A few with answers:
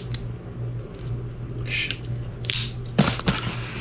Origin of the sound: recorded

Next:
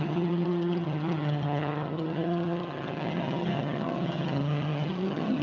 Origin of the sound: remade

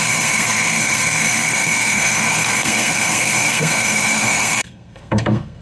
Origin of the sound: remade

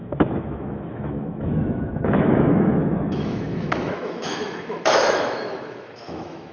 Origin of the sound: remade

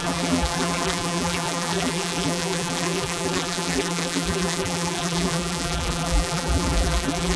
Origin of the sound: remade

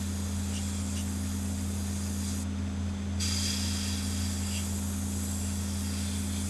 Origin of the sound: recorded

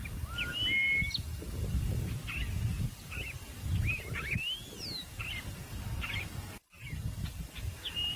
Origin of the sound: recorded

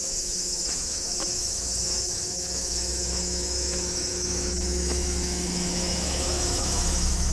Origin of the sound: remade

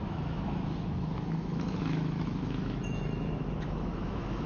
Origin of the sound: remade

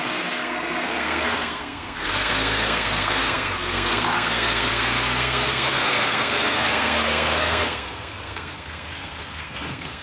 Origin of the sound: remade